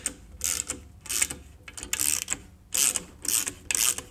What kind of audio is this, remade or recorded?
recorded